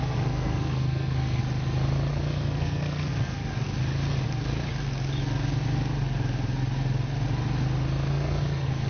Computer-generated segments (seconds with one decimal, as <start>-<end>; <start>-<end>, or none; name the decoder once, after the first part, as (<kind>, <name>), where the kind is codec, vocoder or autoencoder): 0.0-1.4 (codec, SNAC); 2.1-3.4; 8.1-8.9